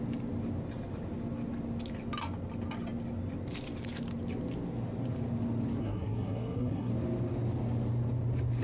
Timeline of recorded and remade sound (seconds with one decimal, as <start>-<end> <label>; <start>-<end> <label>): 0.0-5.8 recorded; 5.8-6.9 remade; 6.9-8.6 recorded